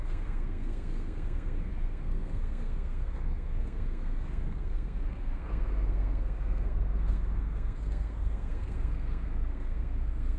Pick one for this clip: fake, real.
fake